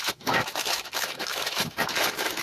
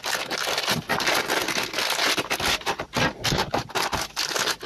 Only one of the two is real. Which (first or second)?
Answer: second